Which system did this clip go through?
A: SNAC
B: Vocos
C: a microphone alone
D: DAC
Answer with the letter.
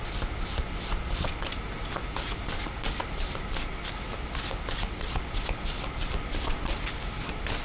C